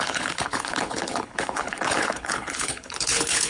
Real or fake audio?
fake